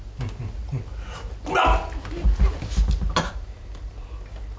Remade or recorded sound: recorded